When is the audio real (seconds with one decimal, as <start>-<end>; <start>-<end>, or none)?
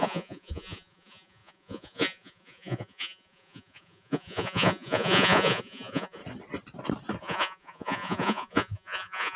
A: 6.2-7.2